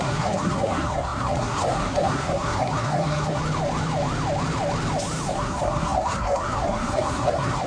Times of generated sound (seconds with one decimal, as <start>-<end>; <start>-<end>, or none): 0.0-3.4; 5.3-7.7